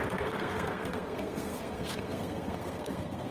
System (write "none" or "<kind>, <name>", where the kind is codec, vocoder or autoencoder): codec, SNAC